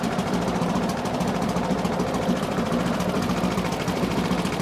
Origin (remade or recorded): remade